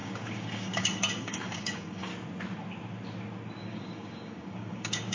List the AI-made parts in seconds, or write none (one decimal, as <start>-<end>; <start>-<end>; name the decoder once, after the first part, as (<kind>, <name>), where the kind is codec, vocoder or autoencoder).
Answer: 0.0-2.1 (codec, DAC); 3.6-5.1